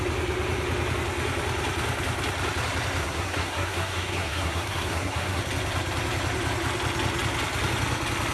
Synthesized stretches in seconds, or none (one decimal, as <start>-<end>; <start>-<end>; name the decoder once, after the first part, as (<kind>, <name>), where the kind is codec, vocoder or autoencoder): 3.0-5.4 (codec, SNAC)